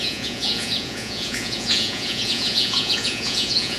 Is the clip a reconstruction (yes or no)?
yes